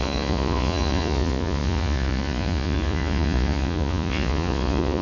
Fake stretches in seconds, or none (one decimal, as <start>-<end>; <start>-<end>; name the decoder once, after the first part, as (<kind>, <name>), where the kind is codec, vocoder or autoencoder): 0.0-5.0 (vocoder, Vocos)